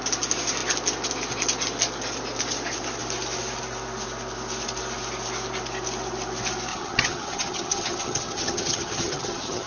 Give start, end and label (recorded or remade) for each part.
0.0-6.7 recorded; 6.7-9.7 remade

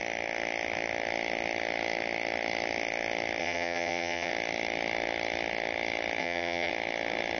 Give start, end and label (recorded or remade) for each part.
0.0-3.4 recorded; 3.4-4.3 remade; 4.3-6.2 recorded; 6.2-6.7 remade; 6.7-7.4 recorded